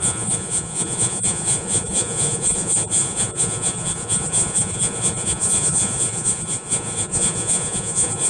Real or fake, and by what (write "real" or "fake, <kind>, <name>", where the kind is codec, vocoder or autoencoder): fake, vocoder, Vocos